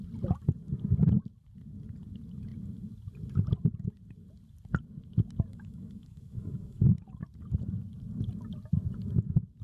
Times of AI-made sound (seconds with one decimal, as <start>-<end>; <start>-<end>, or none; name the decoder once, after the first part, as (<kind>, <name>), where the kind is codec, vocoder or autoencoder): 5.5-6.8 (autoencoder, DAC-VAE)